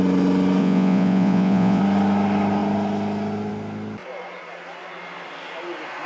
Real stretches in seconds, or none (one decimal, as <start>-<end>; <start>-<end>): 0.0-0.6; 1.8-6.1